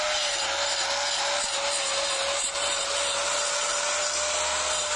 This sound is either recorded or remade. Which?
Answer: recorded